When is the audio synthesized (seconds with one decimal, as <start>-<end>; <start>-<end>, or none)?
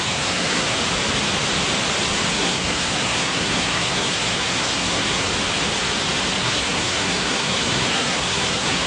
0.0-0.8; 2.3-5.3; 6.4-8.9